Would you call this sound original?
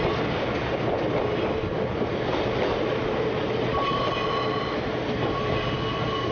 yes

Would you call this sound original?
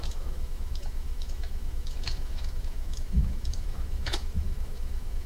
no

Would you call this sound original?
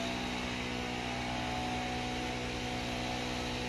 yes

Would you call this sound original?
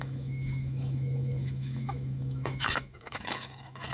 no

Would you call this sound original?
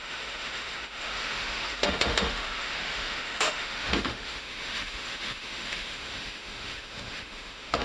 no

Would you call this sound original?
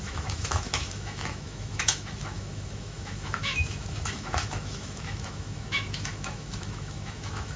no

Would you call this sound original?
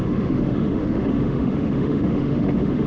no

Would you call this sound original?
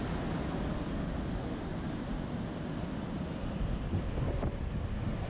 yes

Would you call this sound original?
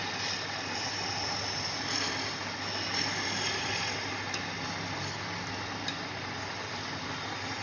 yes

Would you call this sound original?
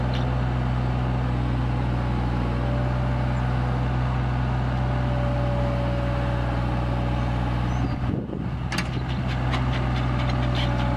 yes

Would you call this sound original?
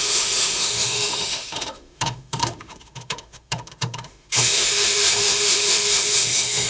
no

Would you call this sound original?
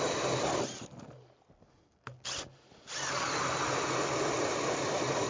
yes